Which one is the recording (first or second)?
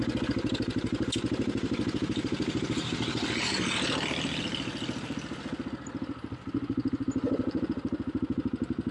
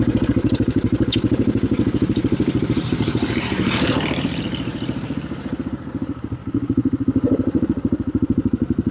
first